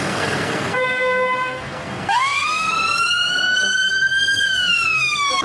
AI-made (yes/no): yes